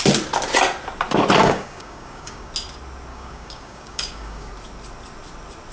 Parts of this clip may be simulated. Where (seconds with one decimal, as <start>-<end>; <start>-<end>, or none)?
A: 1.4-2.5; 3.1-4.5

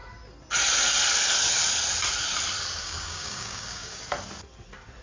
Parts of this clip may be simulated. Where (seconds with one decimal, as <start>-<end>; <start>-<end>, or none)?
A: 2.8-4.0

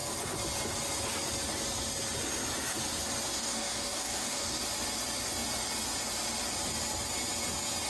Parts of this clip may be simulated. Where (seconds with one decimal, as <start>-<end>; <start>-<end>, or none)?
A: 3.3-4.6

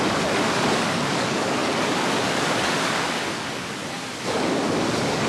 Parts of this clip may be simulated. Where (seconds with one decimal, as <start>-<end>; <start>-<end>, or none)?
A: 0.0-3.8; 4.3-5.3

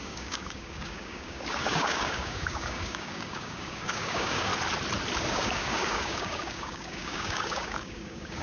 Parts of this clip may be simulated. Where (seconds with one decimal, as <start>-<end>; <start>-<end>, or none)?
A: 0.0-4.5; 5.3-8.4

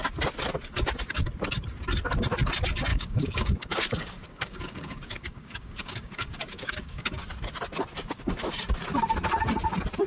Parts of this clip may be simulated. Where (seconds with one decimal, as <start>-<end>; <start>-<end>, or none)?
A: 2.9-7.2

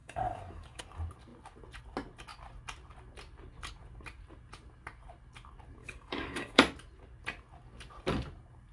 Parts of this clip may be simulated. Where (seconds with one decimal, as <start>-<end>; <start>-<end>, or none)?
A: 0.0-0.8; 5.8-6.6